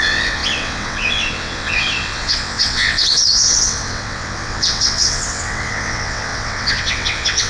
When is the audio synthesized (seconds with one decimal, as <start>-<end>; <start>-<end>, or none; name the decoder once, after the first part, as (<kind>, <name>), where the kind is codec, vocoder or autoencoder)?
0.0-7.5 (vocoder, WaveNeXt)